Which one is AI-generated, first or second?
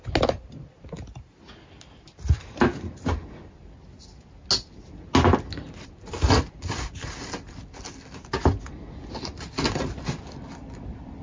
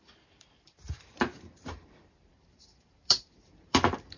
second